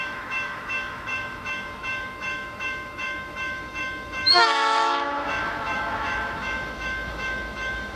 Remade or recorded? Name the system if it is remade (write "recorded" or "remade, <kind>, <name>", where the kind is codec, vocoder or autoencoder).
remade, autoencoder, DAC-VAE